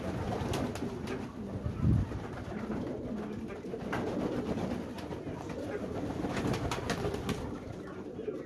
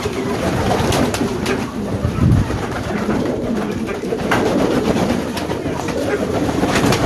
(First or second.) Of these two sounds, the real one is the first